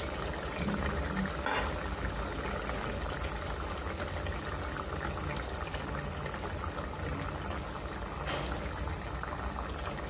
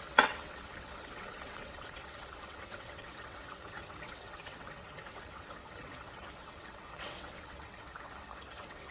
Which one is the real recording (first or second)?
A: first